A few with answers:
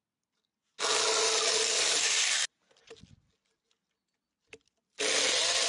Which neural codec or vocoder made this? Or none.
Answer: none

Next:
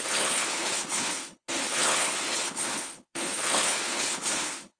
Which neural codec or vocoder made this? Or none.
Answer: codec, HILCodec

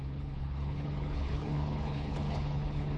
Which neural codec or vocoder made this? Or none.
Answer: codec, HILCodec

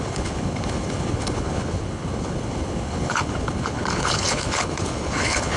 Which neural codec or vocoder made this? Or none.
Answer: codec, HILCodec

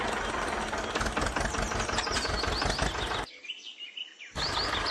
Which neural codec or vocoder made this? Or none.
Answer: none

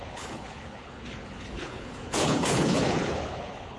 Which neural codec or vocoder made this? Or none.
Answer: codec, HILCodec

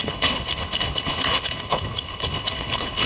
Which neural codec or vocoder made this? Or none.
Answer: codec, HILCodec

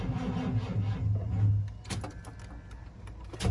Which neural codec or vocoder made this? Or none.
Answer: none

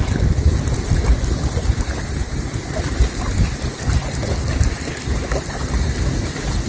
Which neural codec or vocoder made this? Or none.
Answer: none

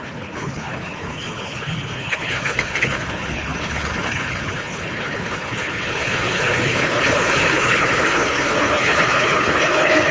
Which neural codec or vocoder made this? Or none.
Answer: codec, HILCodec